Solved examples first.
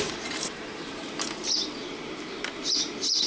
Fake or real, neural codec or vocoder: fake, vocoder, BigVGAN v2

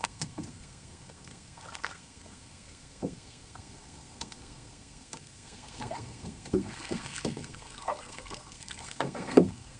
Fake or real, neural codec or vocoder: fake, codec, SNAC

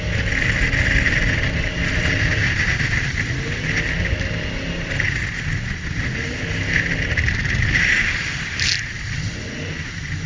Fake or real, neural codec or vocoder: real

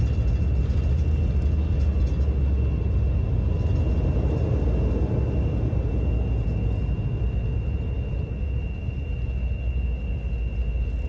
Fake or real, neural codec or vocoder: real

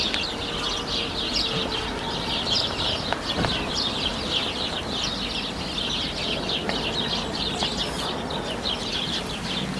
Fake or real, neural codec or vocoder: real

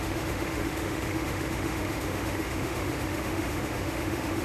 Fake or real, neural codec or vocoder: fake, autoencoder, DAC-VAE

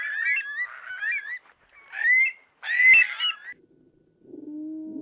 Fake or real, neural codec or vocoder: real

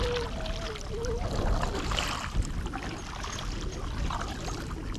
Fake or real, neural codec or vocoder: real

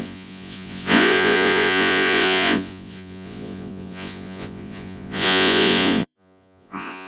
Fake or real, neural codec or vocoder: fake, vocoder, Vocos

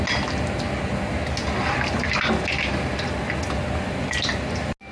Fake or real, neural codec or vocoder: real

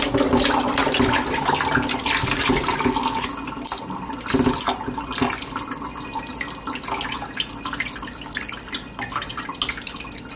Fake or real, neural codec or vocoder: real